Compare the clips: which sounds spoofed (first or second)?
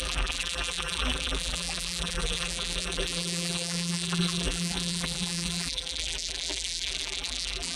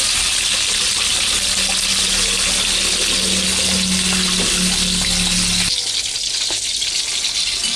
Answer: first